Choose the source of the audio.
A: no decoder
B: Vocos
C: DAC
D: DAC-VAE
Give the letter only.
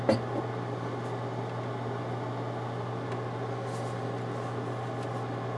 A